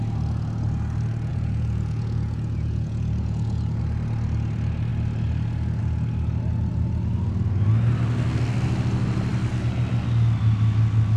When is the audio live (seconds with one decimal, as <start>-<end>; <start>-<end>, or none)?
0.0-1.3; 3.8-11.2